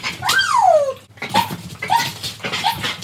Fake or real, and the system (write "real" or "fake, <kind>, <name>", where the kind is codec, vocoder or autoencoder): real